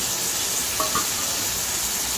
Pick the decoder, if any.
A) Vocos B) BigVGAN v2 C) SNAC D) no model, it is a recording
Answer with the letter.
D